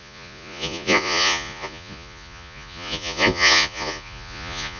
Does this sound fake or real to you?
fake